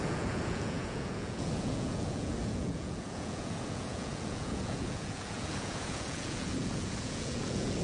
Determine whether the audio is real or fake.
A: fake